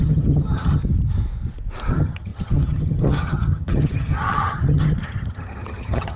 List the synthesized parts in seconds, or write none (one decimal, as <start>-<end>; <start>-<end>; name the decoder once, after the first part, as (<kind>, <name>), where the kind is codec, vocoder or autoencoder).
0.0-0.8 (vocoder, HiFi-GAN); 1.9-6.2